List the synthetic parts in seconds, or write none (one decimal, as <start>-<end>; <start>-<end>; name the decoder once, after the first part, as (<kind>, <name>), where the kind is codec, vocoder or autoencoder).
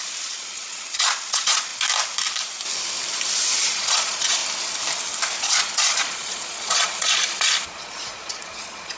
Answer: 0.0-1.7 (vocoder, Vocos); 3.6-4.4; 5.4-9.0